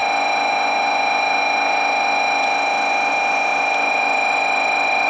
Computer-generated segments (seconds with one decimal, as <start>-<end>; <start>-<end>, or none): none